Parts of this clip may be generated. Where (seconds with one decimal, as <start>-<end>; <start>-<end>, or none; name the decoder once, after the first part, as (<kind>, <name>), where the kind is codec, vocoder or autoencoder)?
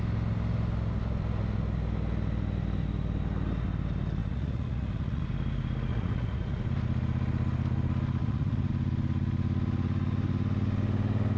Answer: 4.2-5.2 (vocoder, Vocos); 5.9-6.6; 8.2-8.7